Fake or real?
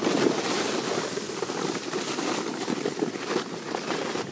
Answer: real